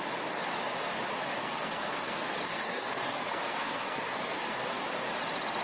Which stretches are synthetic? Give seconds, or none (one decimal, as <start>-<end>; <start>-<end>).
1.4-4.8